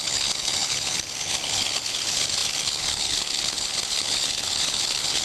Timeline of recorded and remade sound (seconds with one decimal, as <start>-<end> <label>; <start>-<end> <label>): 0.0-5.2 remade